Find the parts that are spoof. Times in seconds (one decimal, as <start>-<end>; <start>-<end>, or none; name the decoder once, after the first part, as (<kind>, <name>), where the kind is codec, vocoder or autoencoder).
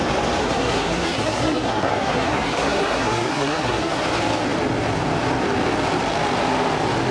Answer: 0.4-4.0 (codec, SNAC)